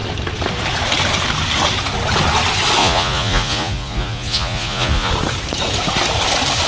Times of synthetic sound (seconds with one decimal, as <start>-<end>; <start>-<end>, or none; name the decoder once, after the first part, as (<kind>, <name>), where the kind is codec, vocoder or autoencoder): 2.8-5.1 (vocoder, Vocos)